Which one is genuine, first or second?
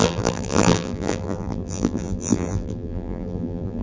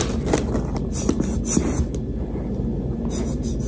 second